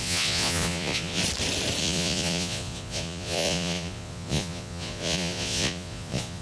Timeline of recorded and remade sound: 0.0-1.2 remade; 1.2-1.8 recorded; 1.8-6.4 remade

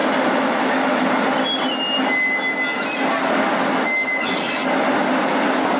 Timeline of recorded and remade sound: 0.0-5.8 recorded

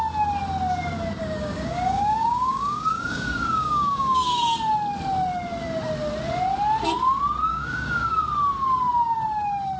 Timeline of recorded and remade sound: 0.0-1.2 recorded; 1.2-4.4 remade; 4.4-7.5 recorded; 7.5-8.2 remade; 8.2-9.8 recorded

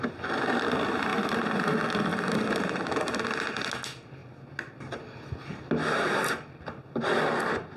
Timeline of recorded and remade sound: 0.0-1.1 recorded; 1.1-1.7 remade; 1.7-2.1 recorded; 2.1-3.2 remade; 3.2-7.8 recorded

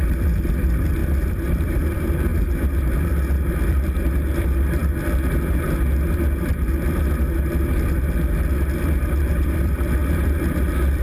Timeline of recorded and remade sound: 0.0-2.3 remade; 2.3-3.7 recorded; 3.7-4.8 remade; 4.8-9.3 recorded; 9.3-11.0 remade